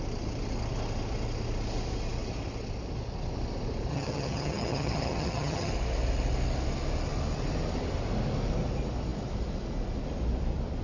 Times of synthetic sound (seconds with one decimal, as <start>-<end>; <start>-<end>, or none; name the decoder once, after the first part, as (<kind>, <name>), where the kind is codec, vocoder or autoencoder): 3.9-5.7 (vocoder, HiFi-GAN)